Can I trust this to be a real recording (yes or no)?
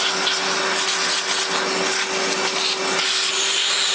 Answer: yes